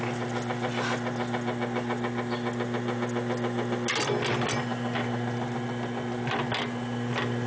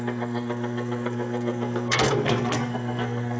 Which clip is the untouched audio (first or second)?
first